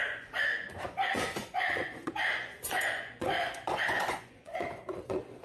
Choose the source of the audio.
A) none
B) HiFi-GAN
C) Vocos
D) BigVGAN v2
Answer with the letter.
C